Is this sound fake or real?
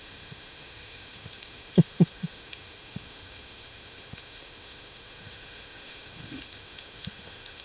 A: fake